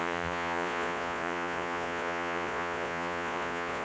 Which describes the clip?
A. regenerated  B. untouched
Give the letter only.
A